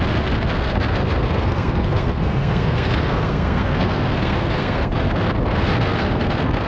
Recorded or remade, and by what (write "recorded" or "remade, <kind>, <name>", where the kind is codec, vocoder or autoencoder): remade, codec, SNAC